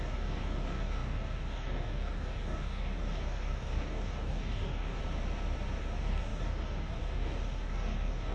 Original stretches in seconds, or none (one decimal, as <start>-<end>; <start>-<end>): 5.0-5.8